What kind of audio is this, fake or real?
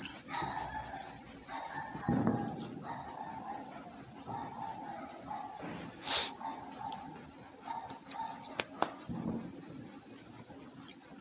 real